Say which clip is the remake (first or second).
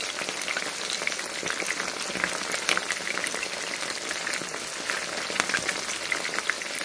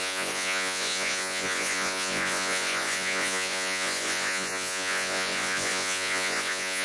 second